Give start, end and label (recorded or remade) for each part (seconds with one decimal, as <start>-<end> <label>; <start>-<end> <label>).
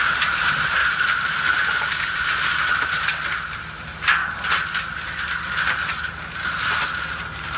0.0-4.2 remade; 4.2-6.1 recorded; 6.1-7.6 remade